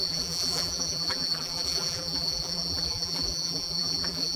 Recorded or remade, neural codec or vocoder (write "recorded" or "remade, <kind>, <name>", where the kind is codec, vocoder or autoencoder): remade, vocoder, BigVGAN v2